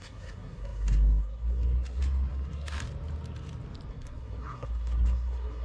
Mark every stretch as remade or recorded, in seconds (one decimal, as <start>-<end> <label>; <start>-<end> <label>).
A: 0.0-2.8 remade; 2.8-3.9 recorded; 3.9-5.6 remade